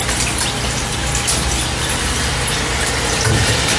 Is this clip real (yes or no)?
yes